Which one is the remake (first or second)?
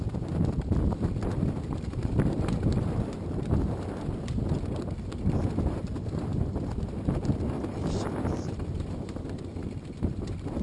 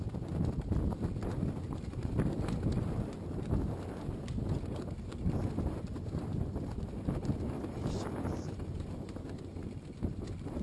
first